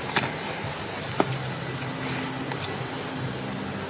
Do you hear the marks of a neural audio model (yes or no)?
no